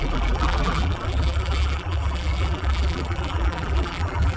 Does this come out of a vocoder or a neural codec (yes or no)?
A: yes